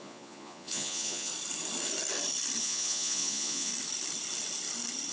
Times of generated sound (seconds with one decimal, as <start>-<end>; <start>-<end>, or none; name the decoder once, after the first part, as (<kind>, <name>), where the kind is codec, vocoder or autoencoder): 0.0-1.3 (vocoder, Vocos); 2.6-3.7